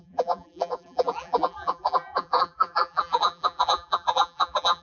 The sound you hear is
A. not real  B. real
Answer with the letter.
A